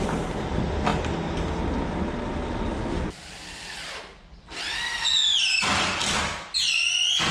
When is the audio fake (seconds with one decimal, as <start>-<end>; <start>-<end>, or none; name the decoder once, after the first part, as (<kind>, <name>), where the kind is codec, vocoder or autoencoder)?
none